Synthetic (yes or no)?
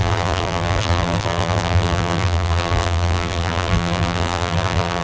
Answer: yes